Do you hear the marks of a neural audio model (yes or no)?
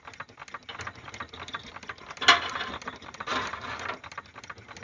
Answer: no